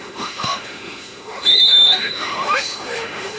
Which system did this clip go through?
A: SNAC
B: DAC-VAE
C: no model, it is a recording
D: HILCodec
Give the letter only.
B